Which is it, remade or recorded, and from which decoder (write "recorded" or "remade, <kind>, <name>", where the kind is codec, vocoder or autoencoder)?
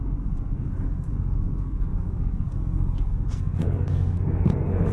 remade, codec, SNAC